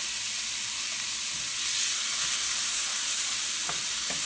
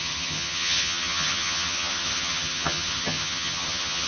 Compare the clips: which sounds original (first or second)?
first